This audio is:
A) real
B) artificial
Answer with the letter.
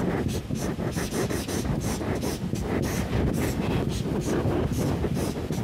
A